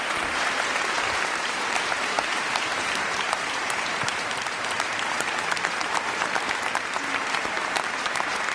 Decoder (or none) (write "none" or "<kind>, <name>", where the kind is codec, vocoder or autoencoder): vocoder, BigVGAN v2